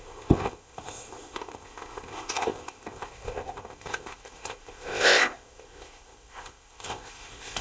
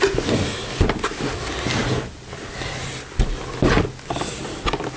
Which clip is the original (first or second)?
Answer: second